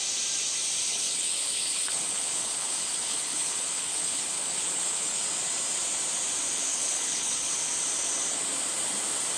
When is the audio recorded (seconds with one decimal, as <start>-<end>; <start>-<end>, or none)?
0.0-0.9; 5.2-6.5; 7.6-9.4